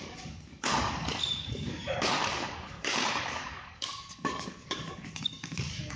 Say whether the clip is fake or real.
fake